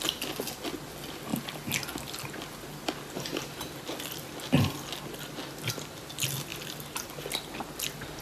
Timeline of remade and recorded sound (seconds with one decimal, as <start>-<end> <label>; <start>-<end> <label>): 0.0-8.2 recorded